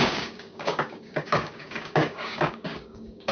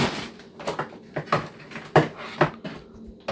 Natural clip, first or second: second